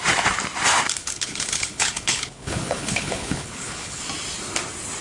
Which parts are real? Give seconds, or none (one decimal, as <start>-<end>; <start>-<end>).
0.0-1.0; 4.0-5.0